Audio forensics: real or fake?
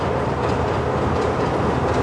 real